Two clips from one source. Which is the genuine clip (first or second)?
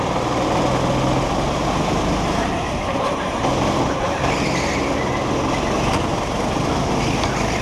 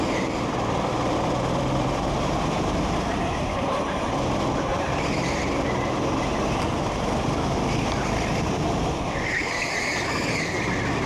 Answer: first